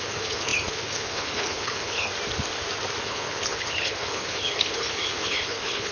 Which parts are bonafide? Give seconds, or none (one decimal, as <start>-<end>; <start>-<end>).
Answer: 2.1-3.0